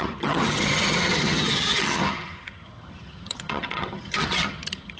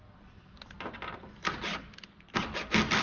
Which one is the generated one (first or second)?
first